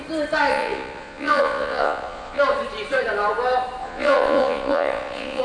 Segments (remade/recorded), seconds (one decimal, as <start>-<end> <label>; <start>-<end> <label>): 0.0-0.5 recorded; 0.5-2.4 remade; 2.4-3.8 recorded; 3.8-5.4 remade